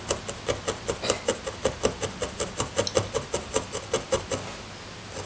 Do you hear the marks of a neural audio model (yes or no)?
no